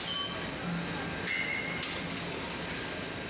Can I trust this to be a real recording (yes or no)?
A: yes